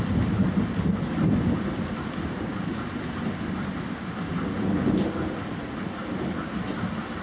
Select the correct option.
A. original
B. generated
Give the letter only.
A